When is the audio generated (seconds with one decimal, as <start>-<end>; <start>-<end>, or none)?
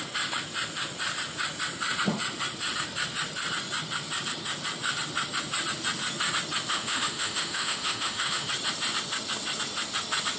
6.7-8.5